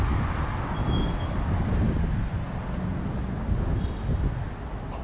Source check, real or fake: real